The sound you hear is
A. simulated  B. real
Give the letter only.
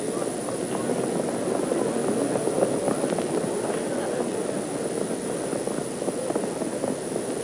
B